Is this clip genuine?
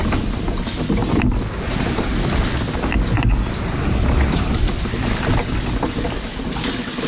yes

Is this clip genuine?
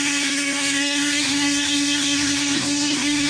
no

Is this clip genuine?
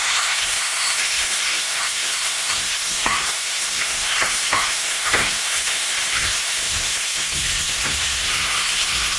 no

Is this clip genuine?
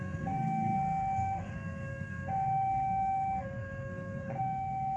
no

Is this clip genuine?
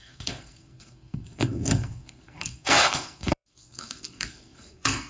no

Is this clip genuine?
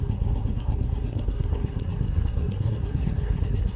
no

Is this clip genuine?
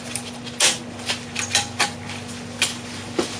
yes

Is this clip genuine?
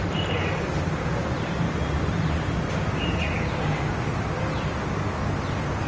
yes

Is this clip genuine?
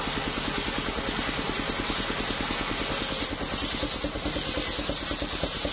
yes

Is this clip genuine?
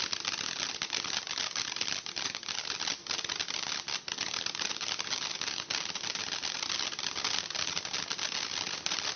yes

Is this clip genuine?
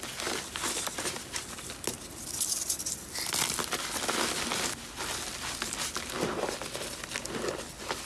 yes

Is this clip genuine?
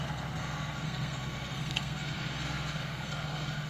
no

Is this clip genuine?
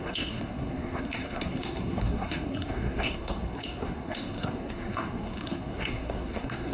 no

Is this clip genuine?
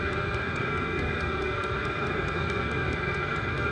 no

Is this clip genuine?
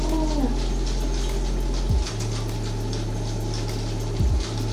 yes